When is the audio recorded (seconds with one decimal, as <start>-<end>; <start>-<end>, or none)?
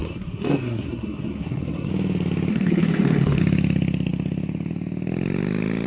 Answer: 1.9-2.5; 3.4-5.9